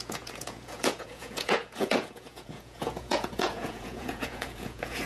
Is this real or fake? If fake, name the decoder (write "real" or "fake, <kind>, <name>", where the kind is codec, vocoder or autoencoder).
fake, vocoder, Vocos